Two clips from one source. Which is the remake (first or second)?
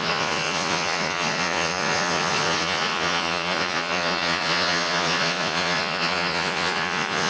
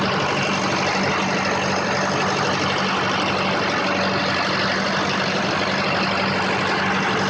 first